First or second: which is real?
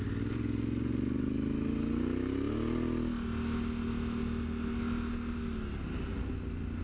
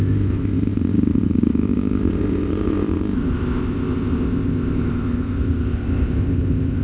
first